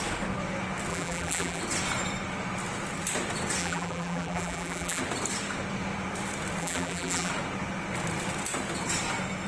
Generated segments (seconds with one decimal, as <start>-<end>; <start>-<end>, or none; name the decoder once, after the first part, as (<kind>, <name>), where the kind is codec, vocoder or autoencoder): 0.9-1.6 (vocoder, BigVGAN v2); 3.6-5.0; 6.6-7.3